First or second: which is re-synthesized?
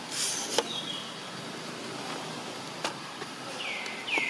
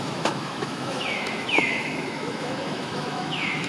second